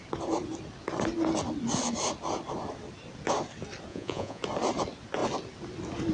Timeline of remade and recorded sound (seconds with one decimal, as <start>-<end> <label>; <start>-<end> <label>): 0.0-3.9 recorded; 3.9-4.4 remade; 4.4-6.1 recorded